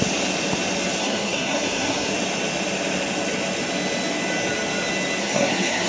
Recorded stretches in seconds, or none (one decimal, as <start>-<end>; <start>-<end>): 0.0-1.0; 2.1-5.2